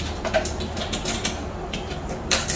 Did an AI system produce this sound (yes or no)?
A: no